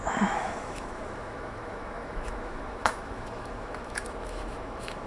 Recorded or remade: remade